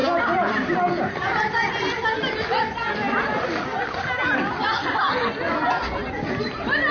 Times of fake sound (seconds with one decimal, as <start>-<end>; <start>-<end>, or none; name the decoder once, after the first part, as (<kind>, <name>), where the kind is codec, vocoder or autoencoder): none